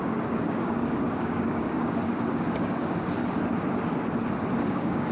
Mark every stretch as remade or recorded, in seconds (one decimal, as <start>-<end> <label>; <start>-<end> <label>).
0.0-3.2 remade; 3.2-4.6 recorded; 4.6-5.1 remade